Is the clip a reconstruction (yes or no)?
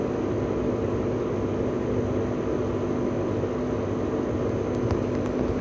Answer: no